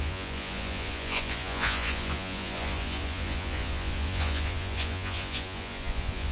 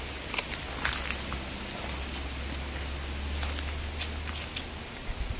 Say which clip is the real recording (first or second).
second